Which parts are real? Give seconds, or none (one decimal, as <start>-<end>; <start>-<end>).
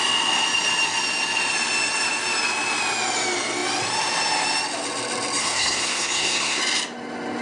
0.0-5.4; 6.6-7.4